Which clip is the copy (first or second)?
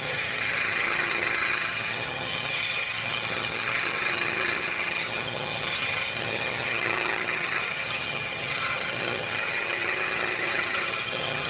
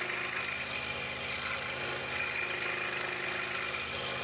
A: first